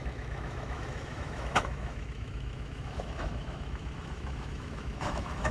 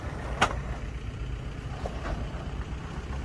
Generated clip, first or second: first